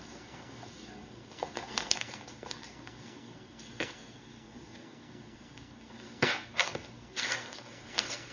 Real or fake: fake